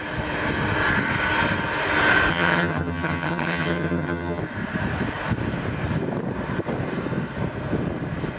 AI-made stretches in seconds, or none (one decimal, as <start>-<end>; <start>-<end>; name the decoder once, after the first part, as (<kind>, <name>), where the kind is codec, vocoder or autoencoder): 2.3-4.4 (vocoder, HiFi-GAN)